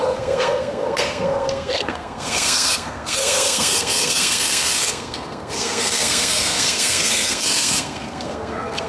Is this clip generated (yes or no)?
yes